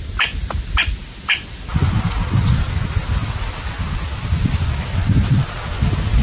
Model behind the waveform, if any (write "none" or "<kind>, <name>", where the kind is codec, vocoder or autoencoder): none